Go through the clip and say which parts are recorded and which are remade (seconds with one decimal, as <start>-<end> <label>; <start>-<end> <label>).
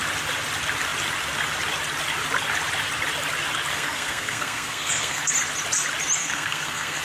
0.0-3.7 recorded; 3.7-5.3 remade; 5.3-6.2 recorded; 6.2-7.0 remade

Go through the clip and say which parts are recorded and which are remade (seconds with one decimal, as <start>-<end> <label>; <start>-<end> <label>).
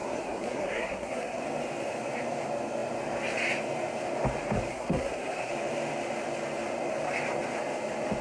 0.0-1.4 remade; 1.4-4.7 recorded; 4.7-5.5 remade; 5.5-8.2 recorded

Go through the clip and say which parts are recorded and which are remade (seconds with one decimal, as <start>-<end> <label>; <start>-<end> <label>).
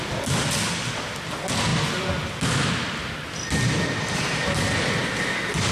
0.0-5.7 recorded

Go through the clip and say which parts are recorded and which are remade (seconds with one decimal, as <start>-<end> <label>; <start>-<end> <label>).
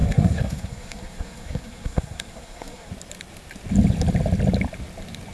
0.0-2.9 remade; 2.9-5.3 recorded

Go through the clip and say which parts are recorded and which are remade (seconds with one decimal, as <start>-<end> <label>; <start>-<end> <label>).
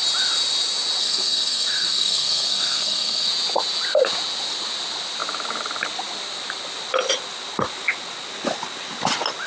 0.0-1.0 recorded; 1.0-3.3 remade; 3.3-9.5 recorded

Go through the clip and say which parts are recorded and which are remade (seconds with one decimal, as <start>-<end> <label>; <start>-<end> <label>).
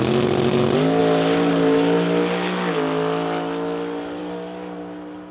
0.0-5.3 recorded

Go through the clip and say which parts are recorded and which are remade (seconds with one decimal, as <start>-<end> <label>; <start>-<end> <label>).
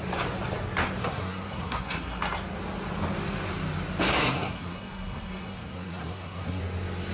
0.0-1.0 recorded; 1.0-2.2 remade; 2.2-4.2 recorded; 4.2-6.6 remade; 6.6-7.1 recorded